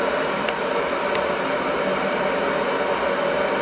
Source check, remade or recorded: recorded